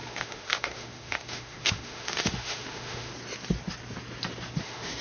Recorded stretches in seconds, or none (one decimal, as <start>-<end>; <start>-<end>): 3.1-4.6